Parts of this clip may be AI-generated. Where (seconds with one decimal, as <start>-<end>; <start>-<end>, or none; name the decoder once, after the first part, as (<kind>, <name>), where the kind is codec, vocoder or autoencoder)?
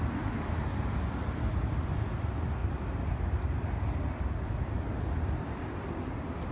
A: none